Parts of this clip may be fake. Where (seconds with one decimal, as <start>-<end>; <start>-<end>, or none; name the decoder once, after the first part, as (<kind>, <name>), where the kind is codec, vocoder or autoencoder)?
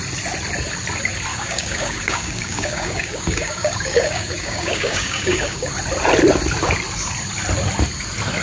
1.3-5.7 (codec, DAC)